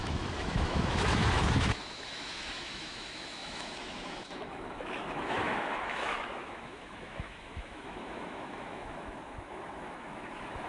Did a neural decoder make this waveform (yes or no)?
yes